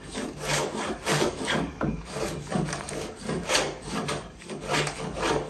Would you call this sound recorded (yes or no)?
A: no